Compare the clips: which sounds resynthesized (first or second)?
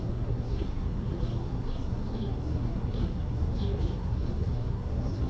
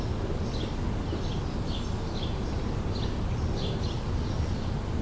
first